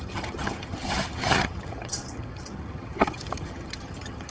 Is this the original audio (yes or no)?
no